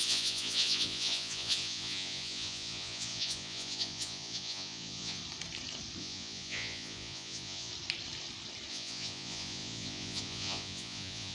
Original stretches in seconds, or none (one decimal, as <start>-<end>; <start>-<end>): 5.2-6.0; 7.7-8.7